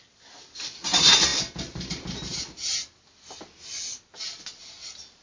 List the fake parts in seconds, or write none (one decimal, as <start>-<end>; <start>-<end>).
none